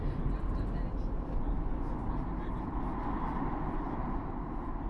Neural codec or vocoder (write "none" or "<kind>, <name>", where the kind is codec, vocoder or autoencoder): none